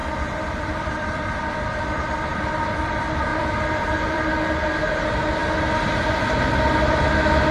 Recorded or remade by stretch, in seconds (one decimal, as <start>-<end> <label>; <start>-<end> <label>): 0.0-0.9 remade; 0.9-3.3 recorded; 3.3-4.3 remade; 4.3-7.5 recorded